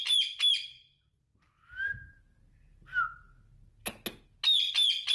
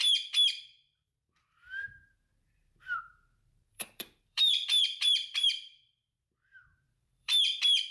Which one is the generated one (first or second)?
second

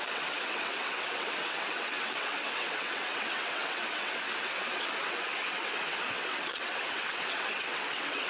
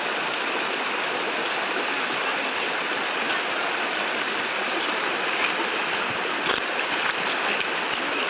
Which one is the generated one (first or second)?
first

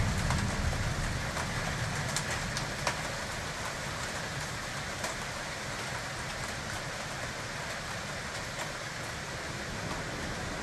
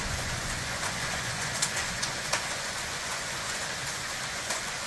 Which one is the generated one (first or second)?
second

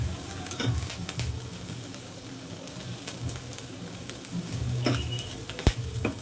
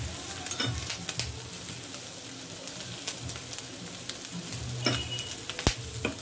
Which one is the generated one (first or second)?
first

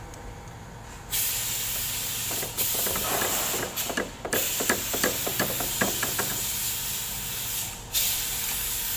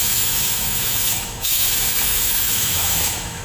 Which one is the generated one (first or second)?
second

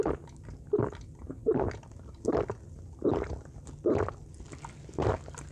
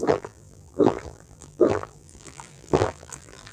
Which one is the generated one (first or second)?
second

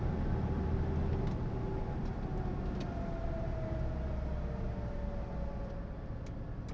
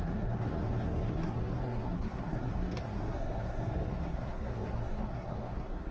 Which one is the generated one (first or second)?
second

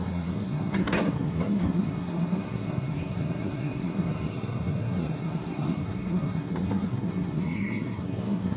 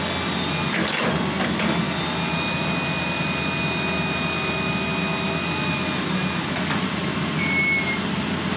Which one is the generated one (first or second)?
first